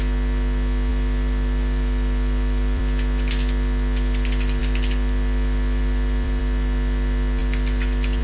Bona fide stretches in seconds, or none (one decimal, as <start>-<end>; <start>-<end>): 0.0-0.9; 2.8-4.6; 6.4-7.4